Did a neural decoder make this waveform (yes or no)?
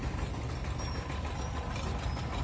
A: no